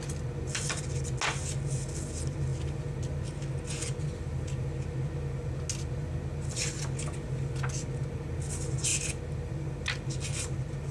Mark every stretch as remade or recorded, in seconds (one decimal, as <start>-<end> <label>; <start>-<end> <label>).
0.0-10.9 recorded